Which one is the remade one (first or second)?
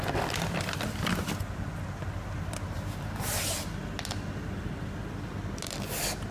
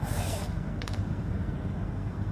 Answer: second